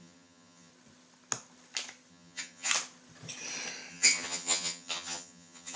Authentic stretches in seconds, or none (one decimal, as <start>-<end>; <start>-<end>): 0.7-2.1; 2.7-3.9